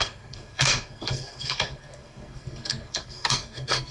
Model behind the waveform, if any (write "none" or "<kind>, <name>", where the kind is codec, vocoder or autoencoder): codec, SNAC